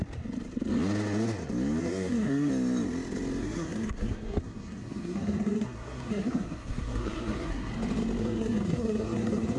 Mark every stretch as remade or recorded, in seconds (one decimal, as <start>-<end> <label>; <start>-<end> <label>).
0.0-1.8 recorded; 1.8-2.5 remade; 2.5-3.4 recorded; 3.4-7.7 remade; 7.7-8.2 recorded; 8.2-9.6 remade